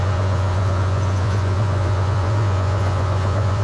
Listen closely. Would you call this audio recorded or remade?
remade